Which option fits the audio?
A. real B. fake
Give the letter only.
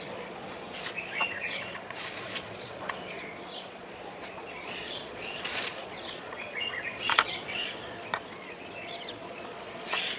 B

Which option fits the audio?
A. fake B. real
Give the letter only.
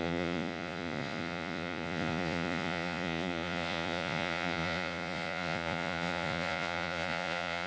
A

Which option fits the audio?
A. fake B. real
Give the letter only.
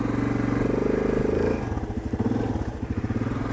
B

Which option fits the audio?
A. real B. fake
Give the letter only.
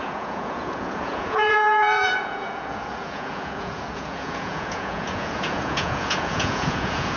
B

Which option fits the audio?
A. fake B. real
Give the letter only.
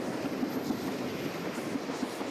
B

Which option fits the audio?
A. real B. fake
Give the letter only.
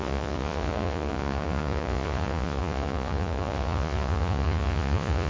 B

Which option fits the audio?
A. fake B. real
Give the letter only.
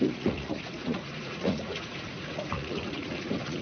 A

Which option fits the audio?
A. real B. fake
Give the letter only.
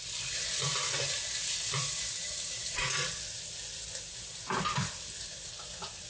A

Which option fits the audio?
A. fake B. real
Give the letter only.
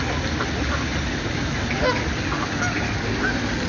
B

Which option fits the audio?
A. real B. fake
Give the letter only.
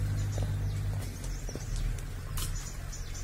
A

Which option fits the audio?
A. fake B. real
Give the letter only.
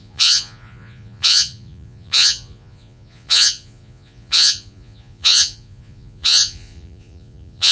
A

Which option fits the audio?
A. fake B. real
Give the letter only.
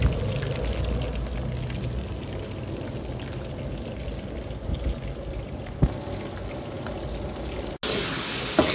B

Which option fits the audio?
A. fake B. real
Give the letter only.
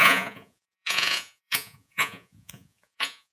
A